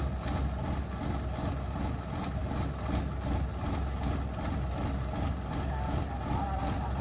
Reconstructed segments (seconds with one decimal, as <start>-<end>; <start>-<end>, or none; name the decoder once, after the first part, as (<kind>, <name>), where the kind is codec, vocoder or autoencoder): none